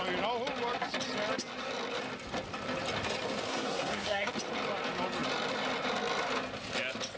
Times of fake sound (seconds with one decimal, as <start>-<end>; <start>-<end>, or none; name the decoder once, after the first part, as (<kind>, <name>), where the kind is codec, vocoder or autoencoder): 3.5-4.3 (codec, SNAC)